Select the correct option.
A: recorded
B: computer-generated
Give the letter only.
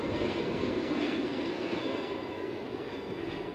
B